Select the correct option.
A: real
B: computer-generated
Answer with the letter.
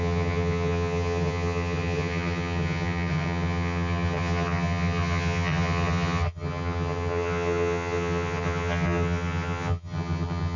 B